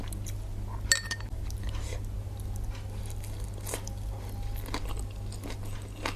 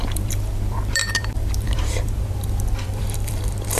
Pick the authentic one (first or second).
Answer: first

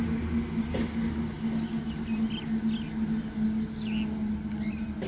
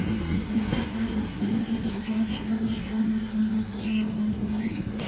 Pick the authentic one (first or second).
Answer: first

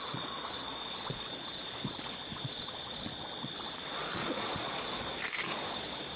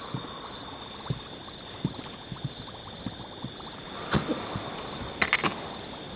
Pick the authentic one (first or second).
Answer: second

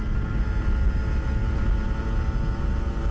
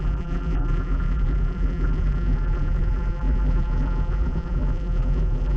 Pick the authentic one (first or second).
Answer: first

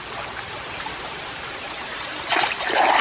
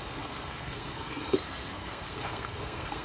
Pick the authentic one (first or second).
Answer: first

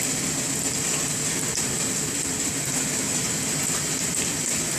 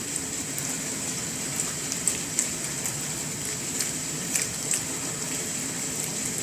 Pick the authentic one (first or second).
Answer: first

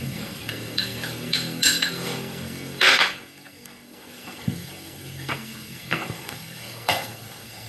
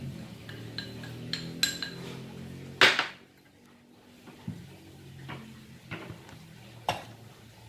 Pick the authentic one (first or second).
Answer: second